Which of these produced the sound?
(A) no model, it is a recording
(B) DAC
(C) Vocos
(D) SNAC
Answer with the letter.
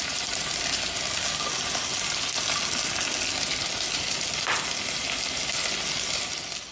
A